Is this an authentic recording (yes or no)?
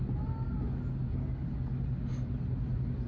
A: yes